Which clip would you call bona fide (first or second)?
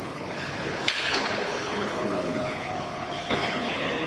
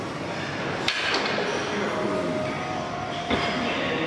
second